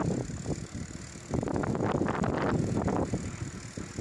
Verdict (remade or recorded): recorded